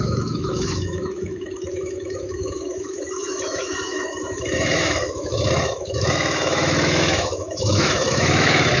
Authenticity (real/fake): fake